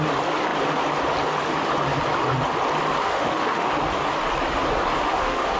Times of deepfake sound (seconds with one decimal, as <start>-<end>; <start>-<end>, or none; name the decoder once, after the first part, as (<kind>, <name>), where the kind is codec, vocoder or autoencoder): 3.0-3.8 (autoencoder, DAC-VAE); 5.0-5.6